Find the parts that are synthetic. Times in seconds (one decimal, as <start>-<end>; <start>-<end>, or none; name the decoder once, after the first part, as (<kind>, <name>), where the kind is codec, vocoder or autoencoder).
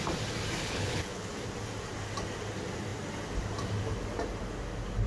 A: 0.6-1.3 (codec, HILCodec)